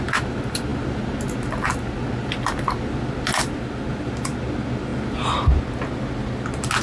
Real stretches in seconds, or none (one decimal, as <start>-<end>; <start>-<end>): 0.0-6.8